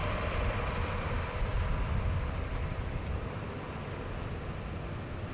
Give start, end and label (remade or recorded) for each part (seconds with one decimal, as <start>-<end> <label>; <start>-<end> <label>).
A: 0.0-2.5 recorded; 2.5-3.5 remade; 3.5-5.3 recorded